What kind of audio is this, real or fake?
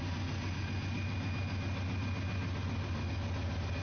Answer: real